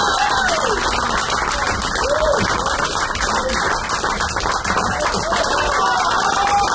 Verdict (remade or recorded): recorded